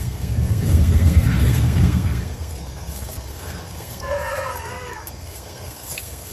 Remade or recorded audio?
remade